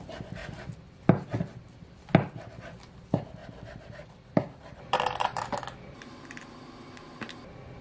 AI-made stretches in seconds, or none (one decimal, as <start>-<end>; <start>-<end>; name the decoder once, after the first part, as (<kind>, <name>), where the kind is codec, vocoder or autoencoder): 3.4-5.6 (vocoder, BigVGAN v2)